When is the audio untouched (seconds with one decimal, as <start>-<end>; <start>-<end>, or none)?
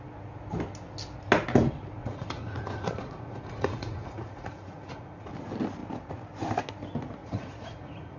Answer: 0.0-2.0; 5.3-7.2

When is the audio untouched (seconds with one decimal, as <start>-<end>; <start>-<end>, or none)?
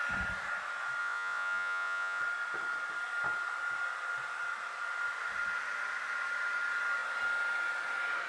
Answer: 0.0-1.0; 2.2-8.3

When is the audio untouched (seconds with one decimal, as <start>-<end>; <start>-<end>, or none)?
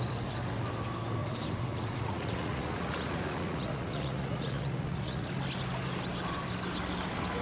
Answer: 0.0-1.2; 5.3-7.4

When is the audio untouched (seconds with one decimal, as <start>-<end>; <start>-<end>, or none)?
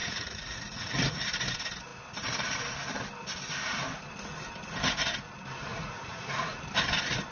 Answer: 1.2-5.7; 6.6-7.3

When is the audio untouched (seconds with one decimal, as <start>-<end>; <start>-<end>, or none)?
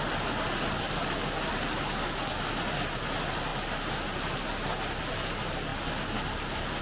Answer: 0.0-6.8